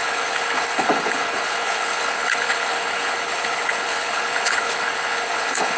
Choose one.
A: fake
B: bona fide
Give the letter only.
A